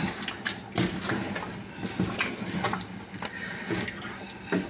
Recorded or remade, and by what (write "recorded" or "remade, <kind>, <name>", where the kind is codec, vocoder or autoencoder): recorded